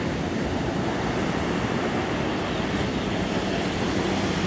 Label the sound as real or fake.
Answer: real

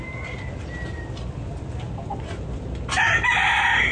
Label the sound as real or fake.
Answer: real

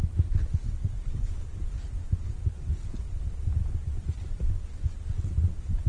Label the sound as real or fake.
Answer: real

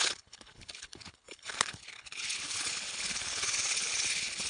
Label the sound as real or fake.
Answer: fake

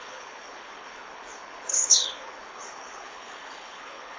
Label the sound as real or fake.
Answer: fake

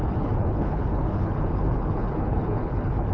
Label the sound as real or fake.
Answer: fake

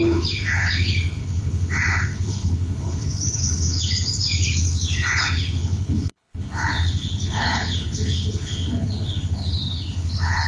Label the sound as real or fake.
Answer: fake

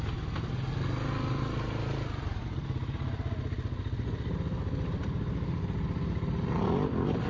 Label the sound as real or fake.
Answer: real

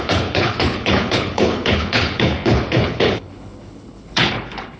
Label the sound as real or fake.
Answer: fake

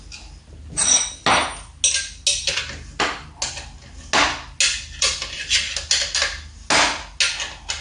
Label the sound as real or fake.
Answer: real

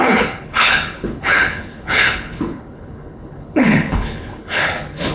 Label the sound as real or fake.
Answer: fake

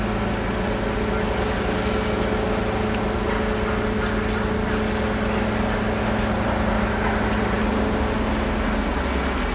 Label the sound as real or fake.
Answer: real